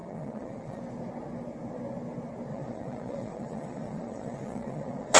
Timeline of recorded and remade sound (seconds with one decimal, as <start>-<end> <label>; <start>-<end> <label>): 0.0-0.8 remade; 0.8-2.5 recorded; 2.5-5.2 remade